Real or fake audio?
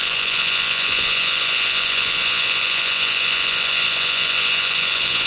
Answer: fake